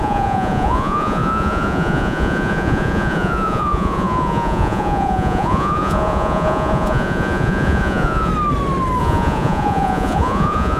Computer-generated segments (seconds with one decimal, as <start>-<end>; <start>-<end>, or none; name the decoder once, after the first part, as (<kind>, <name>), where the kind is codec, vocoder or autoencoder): 0.0-8.3 (vocoder, Vocos); 9.0-10.8